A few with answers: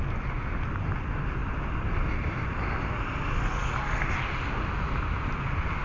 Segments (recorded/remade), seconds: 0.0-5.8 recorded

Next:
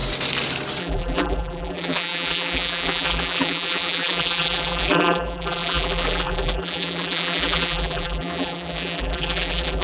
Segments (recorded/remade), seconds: 0.0-0.8 recorded; 0.8-9.8 remade

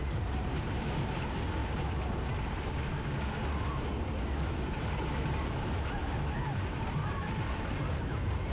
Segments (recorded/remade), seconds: 0.0-1.6 remade; 1.6-6.4 recorded; 6.4-8.5 remade

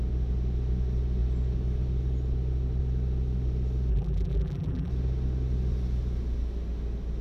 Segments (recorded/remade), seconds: 0.0-3.9 recorded; 3.9-4.9 remade; 4.9-7.2 recorded

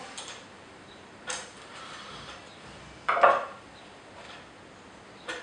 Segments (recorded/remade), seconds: 0.0-2.4 remade; 2.4-5.4 recorded

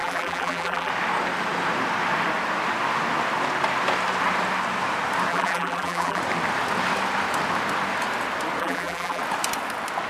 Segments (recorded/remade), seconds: 0.0-0.9 remade; 0.9-5.3 recorded; 5.3-6.2 remade; 6.2-8.6 recorded; 8.6-9.2 remade; 9.2-10.1 recorded

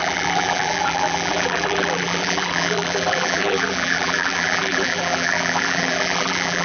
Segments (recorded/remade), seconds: 0.0-6.6 remade